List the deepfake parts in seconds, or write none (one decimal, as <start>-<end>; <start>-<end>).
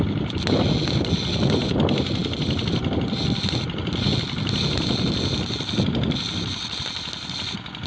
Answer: none